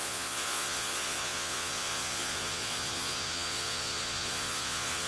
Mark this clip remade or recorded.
remade